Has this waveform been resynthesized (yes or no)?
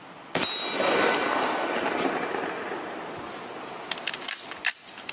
no